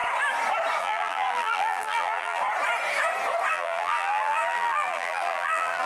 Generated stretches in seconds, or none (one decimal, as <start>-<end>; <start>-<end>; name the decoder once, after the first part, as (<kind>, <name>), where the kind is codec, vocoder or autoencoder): 0.8-2.4 (vocoder, BigVGAN v2); 3.5-5.9